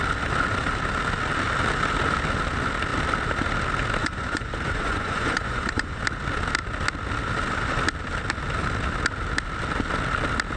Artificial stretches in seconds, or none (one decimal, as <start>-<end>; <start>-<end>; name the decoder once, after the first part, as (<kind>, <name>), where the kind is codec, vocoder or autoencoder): 4.0-6.0 (vocoder, Vocos)